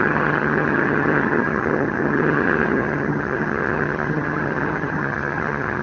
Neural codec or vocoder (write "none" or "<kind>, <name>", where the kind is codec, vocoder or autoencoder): vocoder, HiFi-GAN